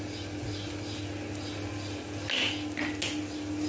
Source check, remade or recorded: recorded